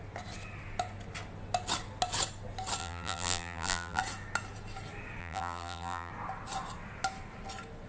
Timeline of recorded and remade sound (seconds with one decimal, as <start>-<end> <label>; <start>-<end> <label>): 0.0-2.8 recorded; 2.8-4.0 remade; 4.0-5.2 recorded; 5.2-6.1 remade; 6.1-7.9 recorded